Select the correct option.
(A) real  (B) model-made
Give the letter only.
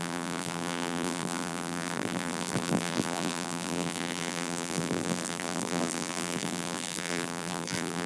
B